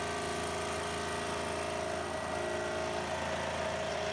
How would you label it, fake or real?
real